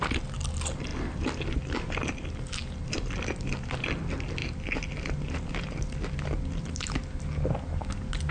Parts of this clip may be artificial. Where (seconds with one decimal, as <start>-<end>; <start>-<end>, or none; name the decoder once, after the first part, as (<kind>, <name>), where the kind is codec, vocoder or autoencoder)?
none